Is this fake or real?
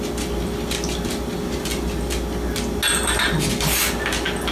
real